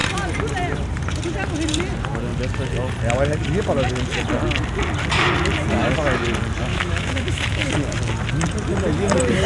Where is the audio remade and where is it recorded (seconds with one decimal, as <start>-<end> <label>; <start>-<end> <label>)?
0.0-6.7 recorded; 6.7-7.7 remade; 7.7-9.5 recorded